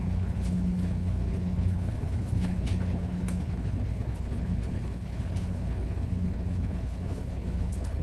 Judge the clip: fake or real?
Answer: fake